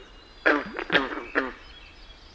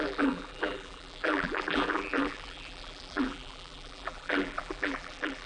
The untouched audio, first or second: first